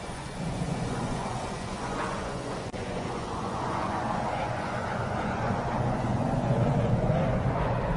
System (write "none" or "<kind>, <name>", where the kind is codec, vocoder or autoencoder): vocoder, Vocos